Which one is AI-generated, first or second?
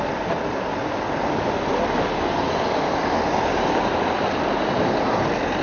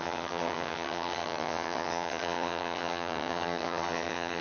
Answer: second